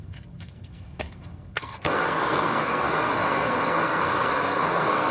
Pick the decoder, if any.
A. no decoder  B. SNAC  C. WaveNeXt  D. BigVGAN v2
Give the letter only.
B